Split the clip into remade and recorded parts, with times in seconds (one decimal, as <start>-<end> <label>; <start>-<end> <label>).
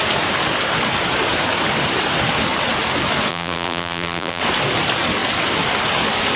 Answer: 0.0-3.3 recorded; 3.3-4.4 remade; 4.4-6.4 recorded